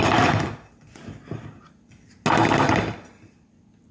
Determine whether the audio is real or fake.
real